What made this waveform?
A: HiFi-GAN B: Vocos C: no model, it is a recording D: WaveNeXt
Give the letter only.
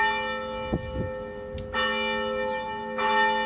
C